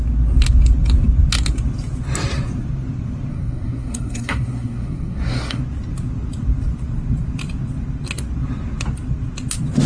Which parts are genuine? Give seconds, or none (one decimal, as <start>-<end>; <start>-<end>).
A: 0.0-3.3; 5.6-9.9